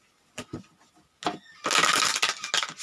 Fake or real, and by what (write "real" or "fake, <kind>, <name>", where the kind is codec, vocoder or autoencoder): real